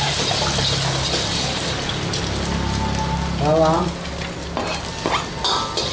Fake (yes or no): no